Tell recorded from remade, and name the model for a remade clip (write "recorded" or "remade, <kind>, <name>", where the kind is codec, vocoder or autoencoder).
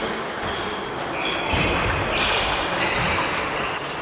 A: recorded